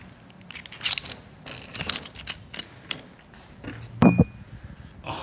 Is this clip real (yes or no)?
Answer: yes